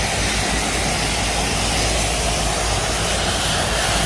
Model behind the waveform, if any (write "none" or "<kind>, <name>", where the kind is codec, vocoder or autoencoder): none